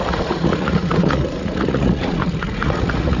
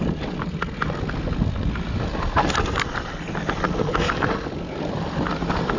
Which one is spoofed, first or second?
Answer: first